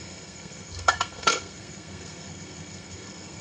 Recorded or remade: remade